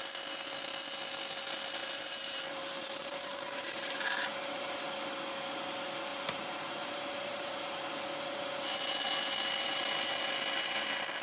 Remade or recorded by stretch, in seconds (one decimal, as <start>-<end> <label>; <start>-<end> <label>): 0.0-1.8 recorded; 1.8-4.8 remade; 4.8-6.1 recorded; 6.1-7.9 remade; 7.9-11.2 recorded